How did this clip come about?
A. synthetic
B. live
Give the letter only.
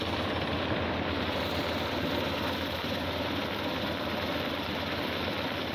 B